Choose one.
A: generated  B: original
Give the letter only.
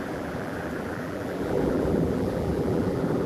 A